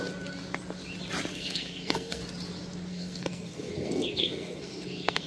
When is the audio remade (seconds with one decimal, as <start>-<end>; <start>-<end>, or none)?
1.3-2.2; 2.9-5.3